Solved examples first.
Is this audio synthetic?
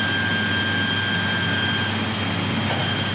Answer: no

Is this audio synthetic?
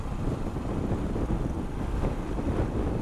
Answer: no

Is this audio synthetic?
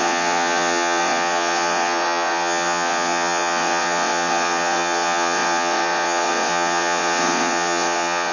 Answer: yes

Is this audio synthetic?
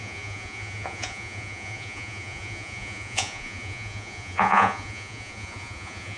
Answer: yes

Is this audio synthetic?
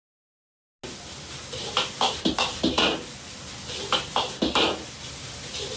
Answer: no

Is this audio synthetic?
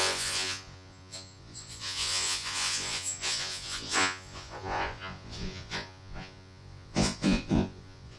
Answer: yes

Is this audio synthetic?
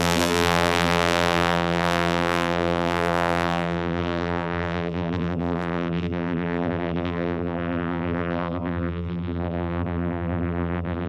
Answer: yes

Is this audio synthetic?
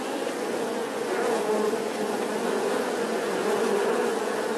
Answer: yes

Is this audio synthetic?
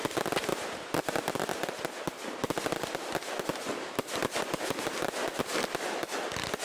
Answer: yes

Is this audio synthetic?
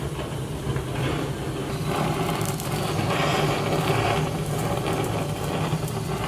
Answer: yes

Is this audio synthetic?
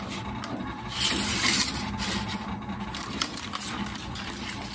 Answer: no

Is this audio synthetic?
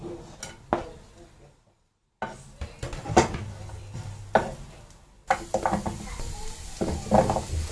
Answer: no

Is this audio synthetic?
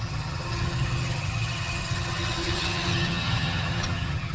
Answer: yes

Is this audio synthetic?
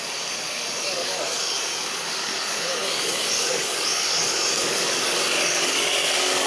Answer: yes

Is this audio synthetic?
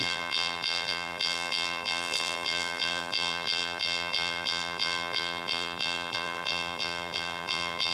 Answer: yes